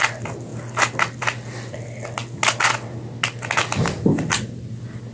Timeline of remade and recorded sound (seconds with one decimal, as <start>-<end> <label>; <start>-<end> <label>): 0.0-5.1 recorded